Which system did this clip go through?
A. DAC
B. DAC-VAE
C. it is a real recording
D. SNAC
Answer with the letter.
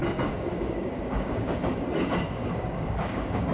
A